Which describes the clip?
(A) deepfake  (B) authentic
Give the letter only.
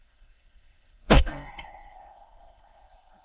A